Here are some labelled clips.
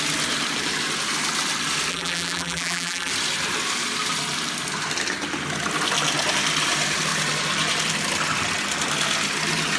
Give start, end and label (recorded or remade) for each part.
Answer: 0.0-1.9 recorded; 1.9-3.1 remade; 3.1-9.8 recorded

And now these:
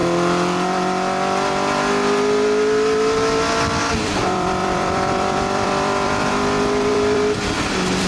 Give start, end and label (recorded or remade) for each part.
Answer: 0.0-3.8 recorded; 3.8-8.1 remade

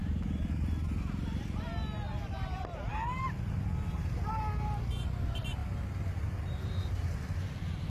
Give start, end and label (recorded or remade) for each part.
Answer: 0.0-7.9 recorded

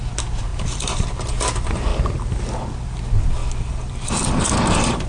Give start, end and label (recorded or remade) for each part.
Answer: 0.0-0.5 recorded; 0.5-1.1 remade; 1.1-1.9 recorded; 1.9-2.4 remade; 2.4-3.4 recorded; 3.4-4.1 remade; 4.1-5.1 recorded

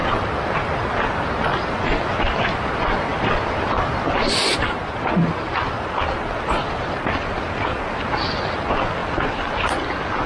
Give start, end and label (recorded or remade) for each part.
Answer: 0.0-10.3 recorded

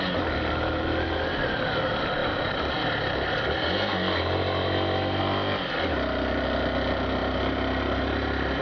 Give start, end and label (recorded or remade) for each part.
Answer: 0.0-2.2 recorded; 2.2-2.7 remade; 2.7-7.2 recorded; 7.2-8.6 remade